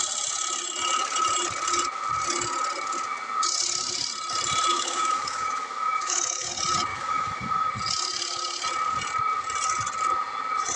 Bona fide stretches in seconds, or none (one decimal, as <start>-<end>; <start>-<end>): 0.0-4.7; 6.5-6.9; 7.7-10.8